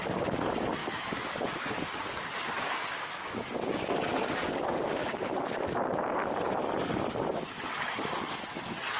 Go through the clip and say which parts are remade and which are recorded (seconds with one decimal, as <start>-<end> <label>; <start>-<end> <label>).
0.0-0.8 recorded; 0.8-5.4 remade; 5.4-9.0 recorded